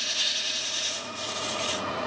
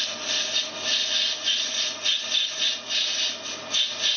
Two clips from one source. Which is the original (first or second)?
second